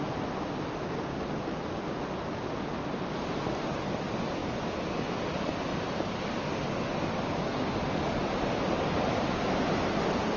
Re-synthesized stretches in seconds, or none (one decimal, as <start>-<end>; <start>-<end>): none